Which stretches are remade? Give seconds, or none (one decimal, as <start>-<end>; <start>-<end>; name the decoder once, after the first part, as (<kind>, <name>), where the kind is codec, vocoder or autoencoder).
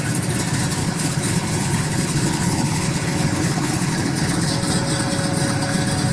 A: 0.8-4.5 (codec, HILCodec)